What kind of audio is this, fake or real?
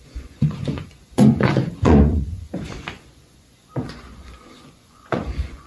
fake